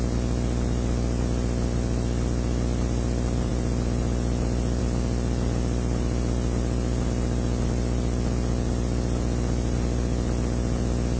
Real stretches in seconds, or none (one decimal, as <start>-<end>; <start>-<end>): 0.0-11.2